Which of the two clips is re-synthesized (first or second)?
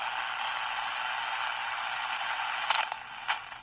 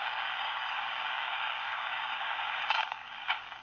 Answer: second